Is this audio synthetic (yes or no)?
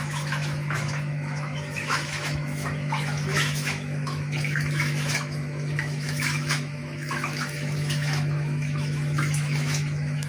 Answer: yes